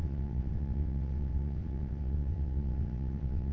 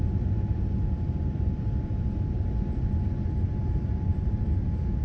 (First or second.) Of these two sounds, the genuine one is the second